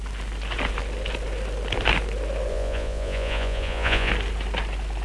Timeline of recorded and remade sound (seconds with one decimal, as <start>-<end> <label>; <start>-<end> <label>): 0.0-2.5 recorded; 2.5-4.1 remade; 4.1-5.0 recorded